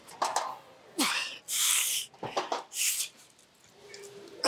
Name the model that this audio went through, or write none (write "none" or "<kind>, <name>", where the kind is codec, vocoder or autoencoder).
none